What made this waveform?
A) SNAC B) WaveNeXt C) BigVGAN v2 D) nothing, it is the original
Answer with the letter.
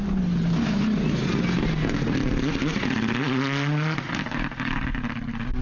D